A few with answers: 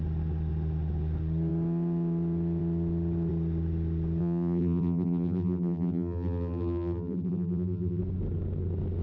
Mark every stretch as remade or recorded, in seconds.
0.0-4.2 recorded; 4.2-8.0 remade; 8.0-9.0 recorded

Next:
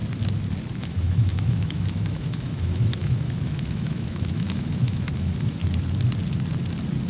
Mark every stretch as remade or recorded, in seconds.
0.0-0.8 recorded; 0.8-5.6 remade; 5.6-7.1 recorded

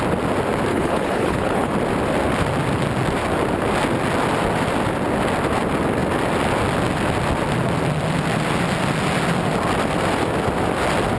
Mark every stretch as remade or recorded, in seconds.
0.0-0.7 recorded; 0.7-1.7 remade; 1.7-11.2 recorded

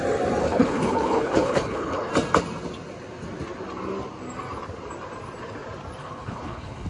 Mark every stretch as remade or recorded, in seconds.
0.0-0.4 recorded; 0.4-2.1 remade; 2.1-6.0 recorded; 6.0-6.9 remade

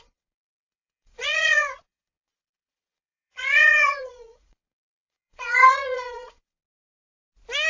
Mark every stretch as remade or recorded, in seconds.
0.0-6.6 remade; 6.6-7.7 recorded